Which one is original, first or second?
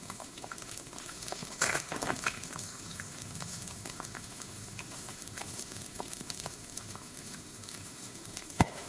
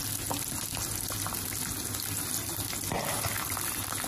second